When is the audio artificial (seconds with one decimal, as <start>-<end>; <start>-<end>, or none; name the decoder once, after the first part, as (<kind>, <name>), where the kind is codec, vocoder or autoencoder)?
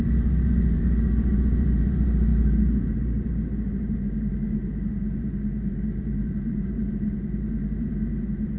0.0-8.6 (vocoder, BigVGAN v2)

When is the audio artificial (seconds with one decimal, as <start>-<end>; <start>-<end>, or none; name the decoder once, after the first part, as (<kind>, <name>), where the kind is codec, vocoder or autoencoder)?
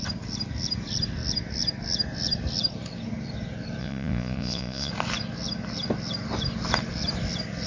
3.8-4.9 (vocoder, Vocos)